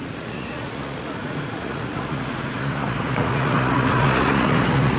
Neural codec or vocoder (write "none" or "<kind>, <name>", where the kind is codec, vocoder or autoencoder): vocoder, Vocos